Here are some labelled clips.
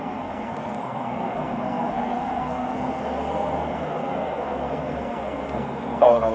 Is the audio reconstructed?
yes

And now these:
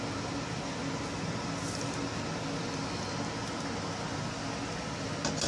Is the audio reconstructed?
no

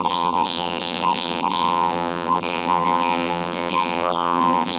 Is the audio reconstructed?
yes